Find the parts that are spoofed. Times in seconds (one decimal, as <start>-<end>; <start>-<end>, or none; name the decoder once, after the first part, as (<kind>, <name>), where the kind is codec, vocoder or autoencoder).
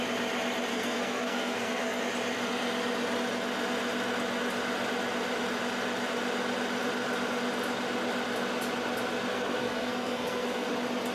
0.7-2.0 (codec, SNAC); 9.3-10.7